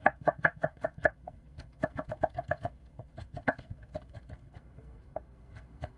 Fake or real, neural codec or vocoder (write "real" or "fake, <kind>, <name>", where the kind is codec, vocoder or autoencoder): fake, codec, SNAC